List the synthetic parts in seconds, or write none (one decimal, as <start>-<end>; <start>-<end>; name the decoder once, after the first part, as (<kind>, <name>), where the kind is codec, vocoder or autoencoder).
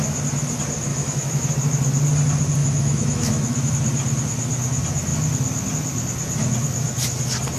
0.9-1.5 (autoencoder, DAC-VAE); 2.6-3.7